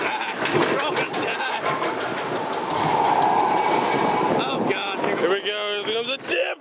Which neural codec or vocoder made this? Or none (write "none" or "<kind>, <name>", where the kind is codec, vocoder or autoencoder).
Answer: none